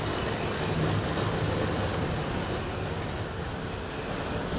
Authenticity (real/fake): real